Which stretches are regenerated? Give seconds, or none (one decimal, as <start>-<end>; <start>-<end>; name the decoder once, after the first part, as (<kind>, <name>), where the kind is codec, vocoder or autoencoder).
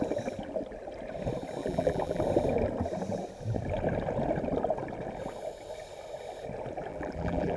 1.6-2.2 (vocoder, BigVGAN v2); 6.9-7.6